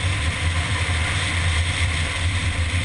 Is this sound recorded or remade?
remade